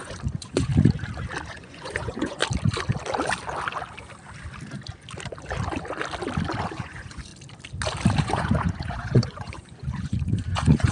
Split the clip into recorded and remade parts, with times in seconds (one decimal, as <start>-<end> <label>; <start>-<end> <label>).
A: 0.0-0.7 remade; 0.7-1.5 recorded; 1.5-2.4 remade; 2.4-6.8 recorded; 6.8-7.3 remade; 7.3-8.2 recorded; 8.2-10.9 remade